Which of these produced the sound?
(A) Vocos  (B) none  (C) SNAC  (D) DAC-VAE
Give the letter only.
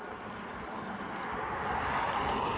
B